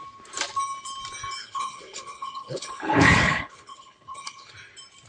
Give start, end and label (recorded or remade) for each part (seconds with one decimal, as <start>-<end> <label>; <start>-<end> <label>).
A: 0.0-1.4 recorded; 1.4-4.5 remade; 4.5-5.1 recorded